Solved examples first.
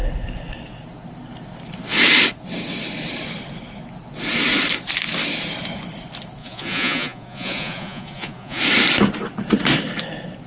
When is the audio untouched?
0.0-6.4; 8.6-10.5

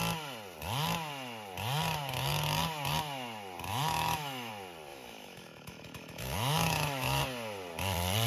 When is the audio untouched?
0.0-3.7; 4.5-4.9; 7.2-8.3

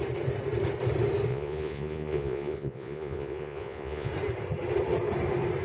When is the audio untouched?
0.0-1.3; 4.1-5.6

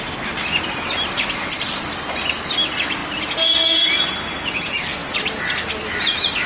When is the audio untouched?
0.0-6.5

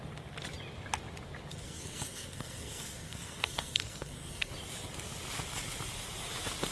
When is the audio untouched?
0.0-1.5; 4.5-6.7

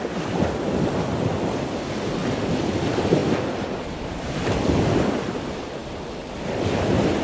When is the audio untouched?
2.2-2.7

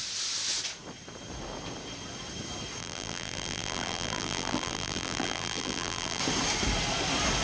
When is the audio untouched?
0.0-2.8; 6.2-7.4